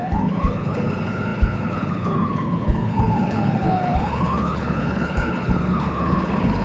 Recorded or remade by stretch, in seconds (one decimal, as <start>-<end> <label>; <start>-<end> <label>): 0.0-6.6 remade